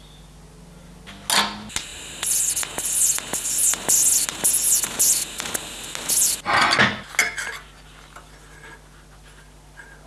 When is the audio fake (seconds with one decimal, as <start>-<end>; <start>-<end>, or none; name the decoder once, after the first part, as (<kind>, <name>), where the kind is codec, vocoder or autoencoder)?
none

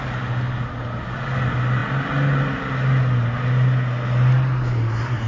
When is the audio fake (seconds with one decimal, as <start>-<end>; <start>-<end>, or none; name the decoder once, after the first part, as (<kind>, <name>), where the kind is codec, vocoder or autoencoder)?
none

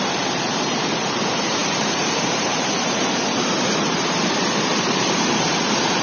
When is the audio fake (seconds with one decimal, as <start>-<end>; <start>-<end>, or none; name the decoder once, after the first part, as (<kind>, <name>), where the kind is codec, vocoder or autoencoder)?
0.0-6.0 (vocoder, BigVGAN v2)

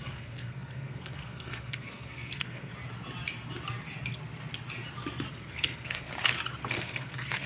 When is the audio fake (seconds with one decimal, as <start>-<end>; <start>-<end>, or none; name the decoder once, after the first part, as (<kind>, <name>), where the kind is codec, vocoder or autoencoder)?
0.0-2.7 (codec, SNAC); 5.3-6.1; 6.6-7.5

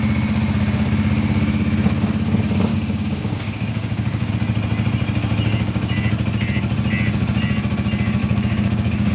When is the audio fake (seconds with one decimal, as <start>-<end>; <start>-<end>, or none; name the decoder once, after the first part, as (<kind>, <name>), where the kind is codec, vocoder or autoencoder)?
2.7-4.3 (codec, DAC); 8.2-9.1